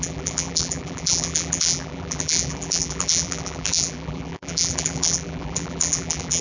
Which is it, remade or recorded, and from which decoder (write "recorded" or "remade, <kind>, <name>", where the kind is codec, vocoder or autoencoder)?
remade, vocoder, BigVGAN v2